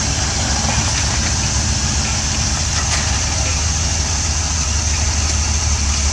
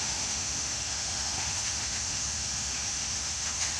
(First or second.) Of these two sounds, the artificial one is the second